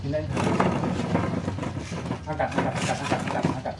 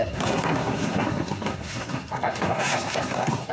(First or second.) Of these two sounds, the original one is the first